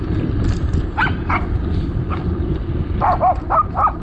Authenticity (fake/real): real